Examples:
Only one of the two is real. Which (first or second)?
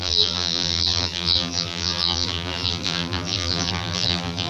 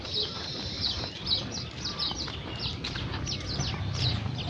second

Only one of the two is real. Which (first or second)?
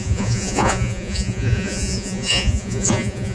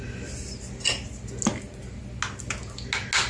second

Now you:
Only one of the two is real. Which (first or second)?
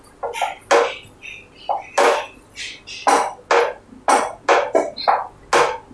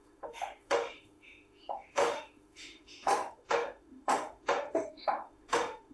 first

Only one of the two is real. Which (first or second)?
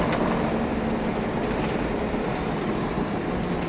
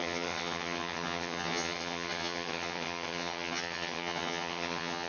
first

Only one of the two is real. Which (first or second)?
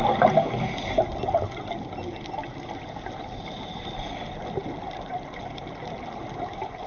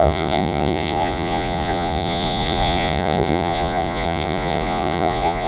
first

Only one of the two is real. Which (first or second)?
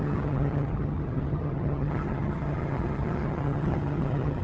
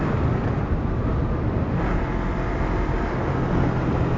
second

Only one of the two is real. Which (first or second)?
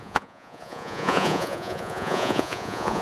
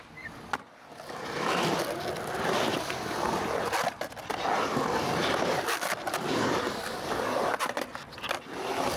second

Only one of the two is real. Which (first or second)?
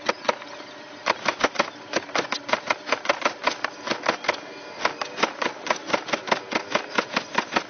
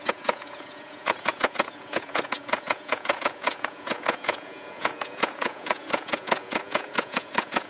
first